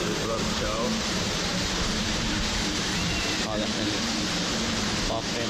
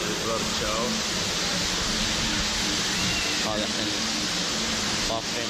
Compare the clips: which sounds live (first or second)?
second